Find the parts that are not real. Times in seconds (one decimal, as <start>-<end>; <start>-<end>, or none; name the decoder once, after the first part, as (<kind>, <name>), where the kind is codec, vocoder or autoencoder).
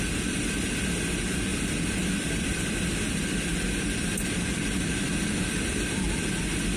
0.0-6.8 (vocoder, BigVGAN v2)